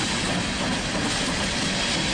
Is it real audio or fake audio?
real